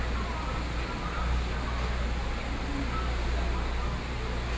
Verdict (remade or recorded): recorded